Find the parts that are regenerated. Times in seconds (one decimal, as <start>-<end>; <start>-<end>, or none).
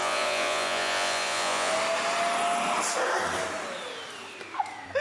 0.0-1.7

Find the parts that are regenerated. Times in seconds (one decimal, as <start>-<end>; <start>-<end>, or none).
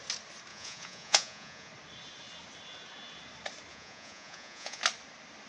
0.5-1.7; 3.7-4.8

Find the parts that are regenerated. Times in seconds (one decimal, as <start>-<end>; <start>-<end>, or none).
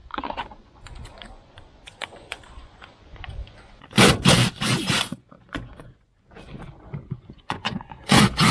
0.0-8.5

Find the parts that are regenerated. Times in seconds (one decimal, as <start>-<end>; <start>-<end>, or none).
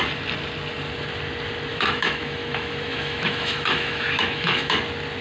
1.7-4.8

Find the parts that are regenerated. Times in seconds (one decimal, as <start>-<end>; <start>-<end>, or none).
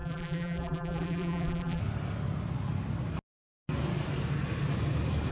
0.0-1.8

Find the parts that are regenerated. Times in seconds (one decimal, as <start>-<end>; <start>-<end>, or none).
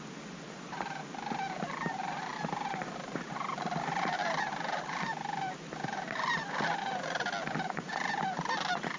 2.3-6.8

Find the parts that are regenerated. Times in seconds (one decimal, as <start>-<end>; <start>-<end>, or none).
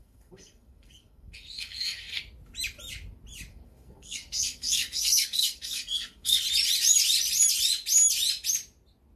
0.0-2.2; 3.5-6.4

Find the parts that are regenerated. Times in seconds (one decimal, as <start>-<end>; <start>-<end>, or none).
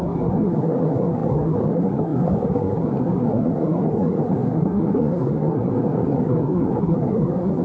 0.0-7.6